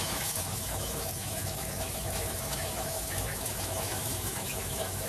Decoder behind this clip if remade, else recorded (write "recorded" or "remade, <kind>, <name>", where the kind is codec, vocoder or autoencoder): remade, autoencoder, DAC-VAE